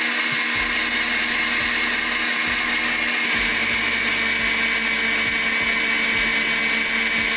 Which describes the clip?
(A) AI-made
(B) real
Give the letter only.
B